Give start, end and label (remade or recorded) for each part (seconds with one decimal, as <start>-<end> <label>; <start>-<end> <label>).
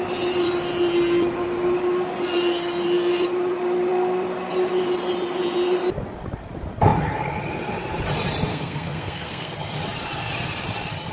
0.0-8.5 recorded; 8.5-9.5 remade; 9.5-11.1 recorded